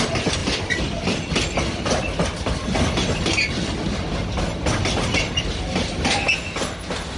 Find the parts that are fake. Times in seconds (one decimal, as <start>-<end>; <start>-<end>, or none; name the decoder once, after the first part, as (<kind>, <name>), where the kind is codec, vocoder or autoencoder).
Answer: none